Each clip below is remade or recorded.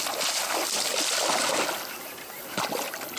recorded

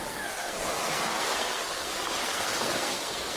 remade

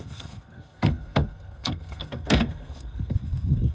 remade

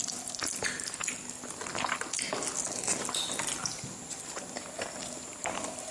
recorded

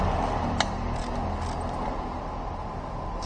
recorded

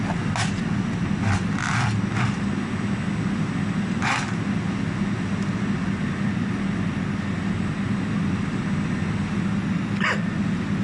recorded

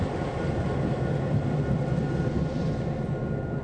recorded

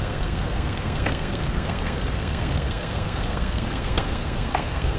remade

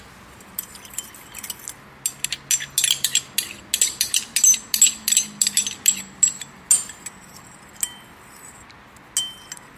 recorded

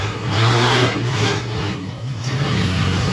remade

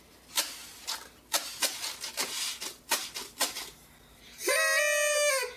recorded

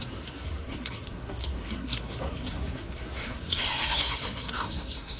remade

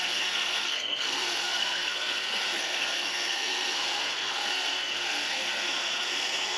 remade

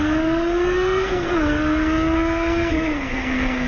remade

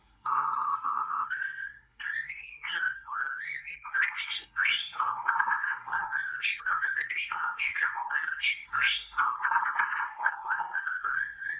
remade